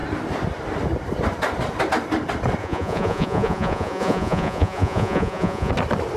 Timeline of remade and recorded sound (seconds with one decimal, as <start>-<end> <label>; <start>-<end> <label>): 0.0-2.6 recorded; 2.6-5.7 remade; 5.7-6.2 recorded